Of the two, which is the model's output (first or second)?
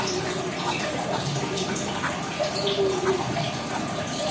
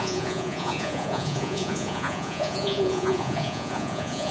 second